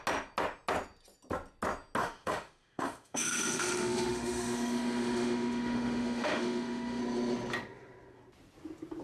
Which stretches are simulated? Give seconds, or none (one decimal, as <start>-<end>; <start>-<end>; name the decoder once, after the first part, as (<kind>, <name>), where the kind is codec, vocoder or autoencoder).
2.0-7.0 (autoencoder, DAC-VAE)